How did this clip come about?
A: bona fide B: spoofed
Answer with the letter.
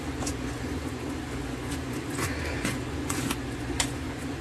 B